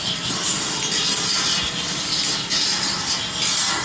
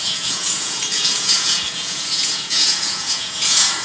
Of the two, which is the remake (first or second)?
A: second